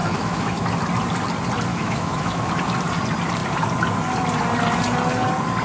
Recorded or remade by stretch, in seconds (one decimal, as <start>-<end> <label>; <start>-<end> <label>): 0.0-0.7 remade; 0.7-1.7 recorded; 1.7-2.5 remade; 2.5-5.6 recorded